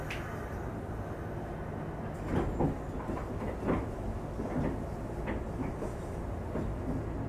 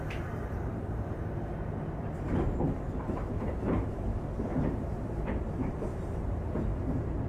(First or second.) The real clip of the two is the first